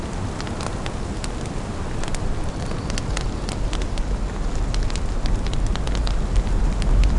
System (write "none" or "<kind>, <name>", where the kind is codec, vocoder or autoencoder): none